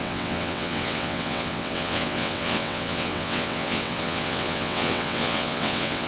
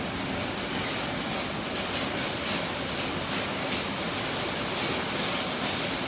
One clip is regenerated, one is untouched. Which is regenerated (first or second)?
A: first